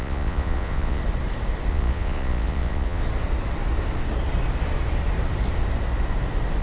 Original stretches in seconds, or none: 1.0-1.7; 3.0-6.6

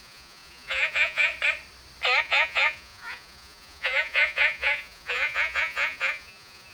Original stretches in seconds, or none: 1.3-2.2